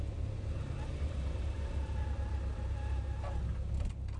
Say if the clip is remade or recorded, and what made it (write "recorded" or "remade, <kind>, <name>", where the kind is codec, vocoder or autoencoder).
recorded